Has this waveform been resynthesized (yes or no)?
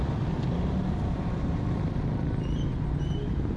no